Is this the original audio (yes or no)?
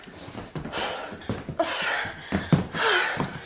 yes